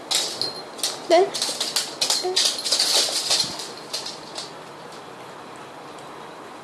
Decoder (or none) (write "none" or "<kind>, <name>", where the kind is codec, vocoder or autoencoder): none